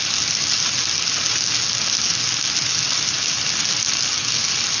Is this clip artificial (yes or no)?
no